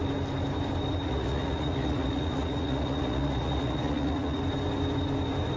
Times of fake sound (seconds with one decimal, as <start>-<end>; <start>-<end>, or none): 1.0-4.4